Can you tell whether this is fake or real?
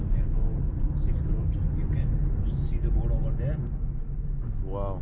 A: real